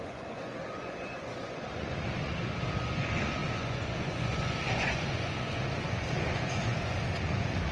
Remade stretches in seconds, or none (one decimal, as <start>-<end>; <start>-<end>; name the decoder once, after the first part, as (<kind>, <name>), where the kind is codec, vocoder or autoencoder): 0.0-2.3 (vocoder, Vocos); 2.8-7.7